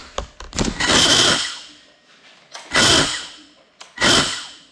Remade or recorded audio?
recorded